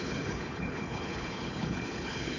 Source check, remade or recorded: remade